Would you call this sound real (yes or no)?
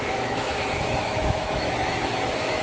no